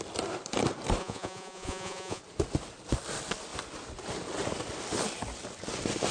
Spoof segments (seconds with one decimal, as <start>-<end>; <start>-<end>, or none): 1.0-2.2